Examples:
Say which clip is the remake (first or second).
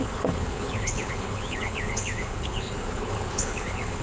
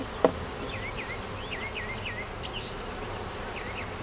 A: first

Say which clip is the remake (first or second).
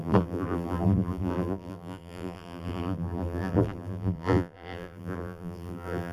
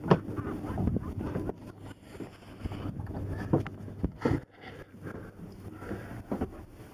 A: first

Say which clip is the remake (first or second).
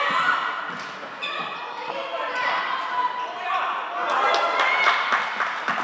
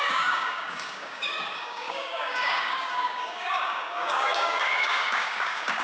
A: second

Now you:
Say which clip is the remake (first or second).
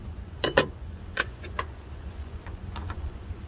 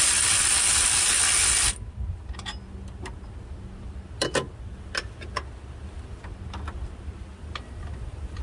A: first